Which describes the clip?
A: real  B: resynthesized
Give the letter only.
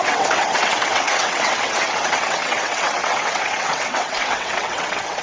B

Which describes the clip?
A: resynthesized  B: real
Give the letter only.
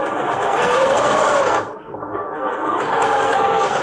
A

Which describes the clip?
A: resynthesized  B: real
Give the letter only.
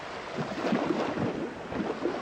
B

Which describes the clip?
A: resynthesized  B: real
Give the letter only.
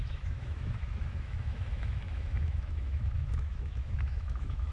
A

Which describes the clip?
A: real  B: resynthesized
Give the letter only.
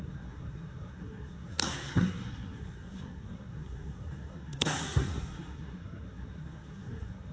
B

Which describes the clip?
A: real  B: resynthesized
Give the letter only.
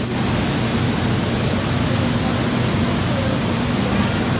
A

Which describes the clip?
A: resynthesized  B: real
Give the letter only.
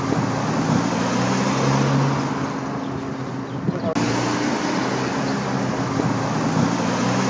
B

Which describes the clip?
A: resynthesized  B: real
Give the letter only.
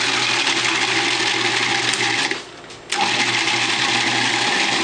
B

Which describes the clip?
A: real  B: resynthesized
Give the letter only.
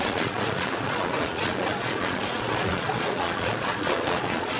B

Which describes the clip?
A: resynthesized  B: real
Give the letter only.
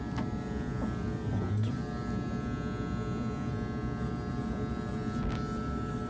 B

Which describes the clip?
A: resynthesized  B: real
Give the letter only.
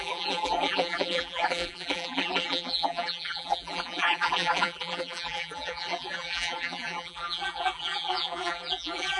A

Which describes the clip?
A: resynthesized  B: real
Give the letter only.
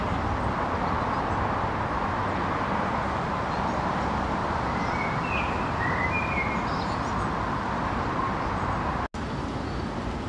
B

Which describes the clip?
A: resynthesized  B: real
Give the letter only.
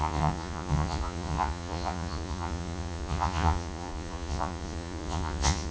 A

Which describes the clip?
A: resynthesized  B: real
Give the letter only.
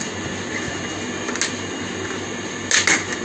B